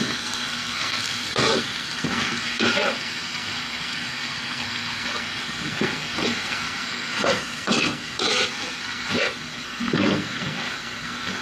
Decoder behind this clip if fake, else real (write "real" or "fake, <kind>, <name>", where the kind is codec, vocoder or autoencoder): fake, codec, SNAC